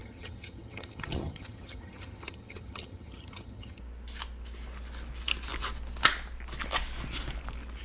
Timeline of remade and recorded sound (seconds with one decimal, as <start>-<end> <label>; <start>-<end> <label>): 0.0-3.8 remade; 3.8-7.8 recorded